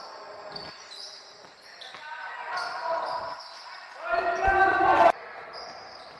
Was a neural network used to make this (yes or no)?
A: no